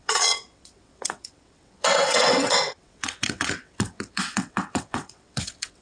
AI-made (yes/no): yes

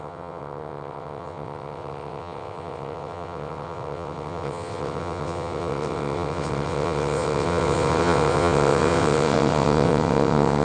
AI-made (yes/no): yes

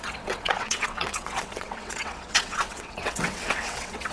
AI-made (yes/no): yes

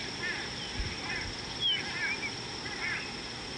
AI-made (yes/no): no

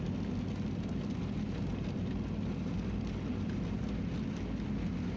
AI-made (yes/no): no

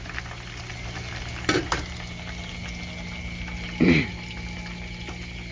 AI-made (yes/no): no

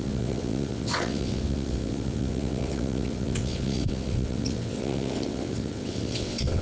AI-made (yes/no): yes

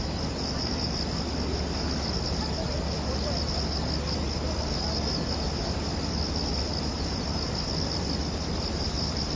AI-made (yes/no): no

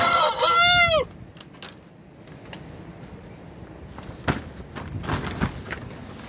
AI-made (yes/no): no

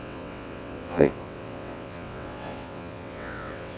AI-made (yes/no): yes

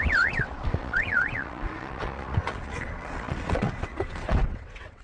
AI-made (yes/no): yes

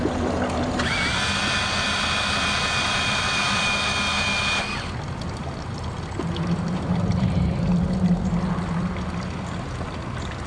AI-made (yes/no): no